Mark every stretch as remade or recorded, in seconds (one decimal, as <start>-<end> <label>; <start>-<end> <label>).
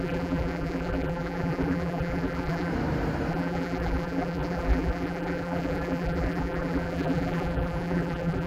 0.0-2.7 remade; 2.7-3.3 recorded; 3.3-8.5 remade